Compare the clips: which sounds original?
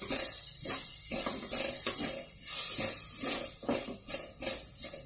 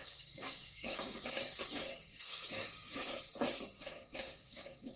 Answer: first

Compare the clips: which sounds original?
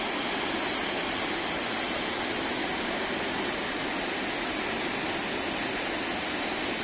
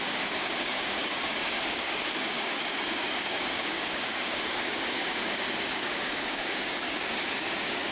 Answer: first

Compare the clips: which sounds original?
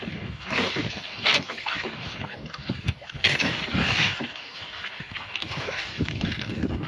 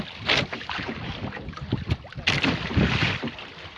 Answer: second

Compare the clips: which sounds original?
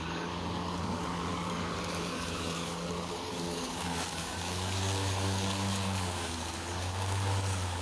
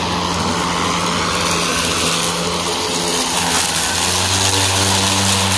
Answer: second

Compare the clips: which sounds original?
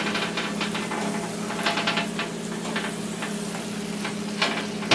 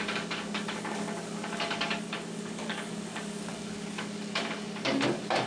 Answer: first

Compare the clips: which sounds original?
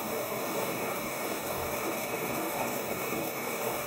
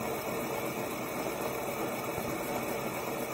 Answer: second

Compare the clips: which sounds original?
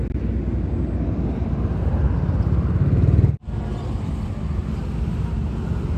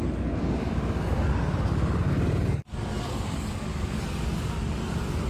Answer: first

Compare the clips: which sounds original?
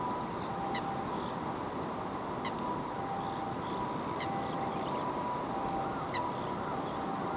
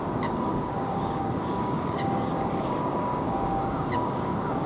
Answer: first